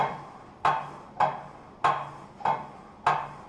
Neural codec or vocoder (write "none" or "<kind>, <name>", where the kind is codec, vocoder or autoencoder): none